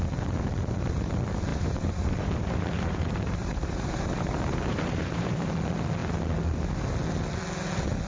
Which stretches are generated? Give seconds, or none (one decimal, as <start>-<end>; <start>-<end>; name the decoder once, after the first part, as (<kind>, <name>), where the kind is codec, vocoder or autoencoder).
1.5-5.5 (vocoder, BigVGAN v2)